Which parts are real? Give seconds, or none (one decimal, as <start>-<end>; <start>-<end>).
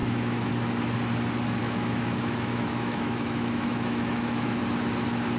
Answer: 0.5-1.6; 4.6-5.4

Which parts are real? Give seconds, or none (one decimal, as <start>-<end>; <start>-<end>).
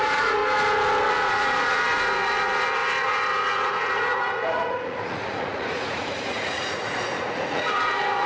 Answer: 0.4-1.1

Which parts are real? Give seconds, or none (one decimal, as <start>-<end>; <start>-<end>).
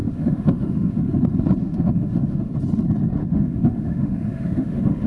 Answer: 1.0-1.6; 2.5-3.2